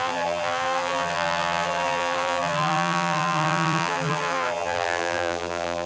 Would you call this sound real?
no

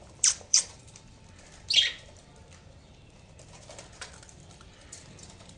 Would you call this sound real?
no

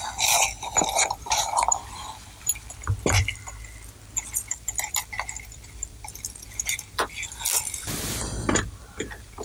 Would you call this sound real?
no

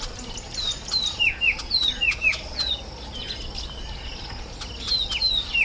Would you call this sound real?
yes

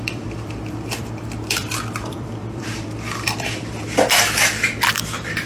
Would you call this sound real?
no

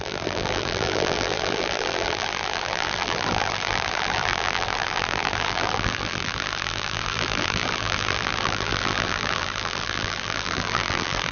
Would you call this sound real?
no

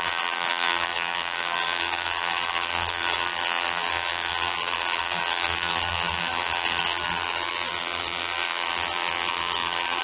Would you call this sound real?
no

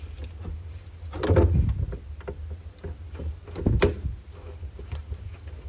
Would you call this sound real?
yes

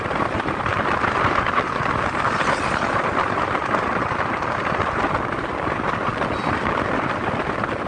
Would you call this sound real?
no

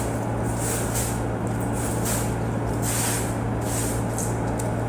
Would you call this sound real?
yes